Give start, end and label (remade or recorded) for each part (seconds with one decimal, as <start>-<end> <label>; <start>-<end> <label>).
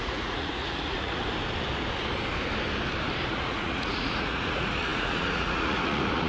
0.0-1.2 remade; 1.2-3.3 recorded; 3.3-6.3 remade